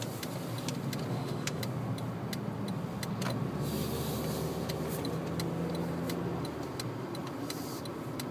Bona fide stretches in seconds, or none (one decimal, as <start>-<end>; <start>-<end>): 0.0-1.1; 1.6-8.3